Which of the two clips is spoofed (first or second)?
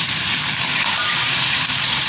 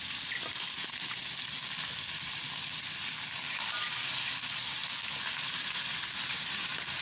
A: first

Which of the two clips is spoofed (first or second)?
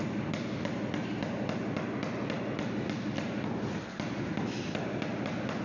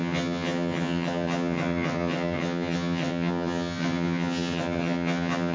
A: second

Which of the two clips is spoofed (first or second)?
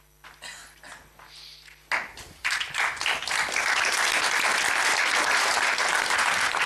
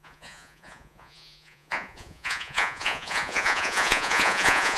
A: second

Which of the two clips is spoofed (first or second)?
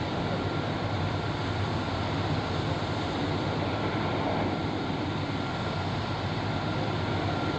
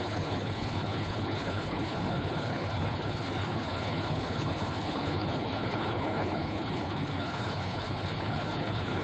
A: second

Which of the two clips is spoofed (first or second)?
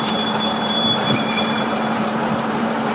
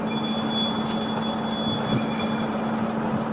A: first